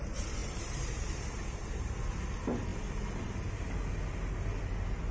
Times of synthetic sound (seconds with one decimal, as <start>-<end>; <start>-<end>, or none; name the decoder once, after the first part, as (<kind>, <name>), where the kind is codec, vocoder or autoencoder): 0.4-2.0 (vocoder, BigVGAN v2)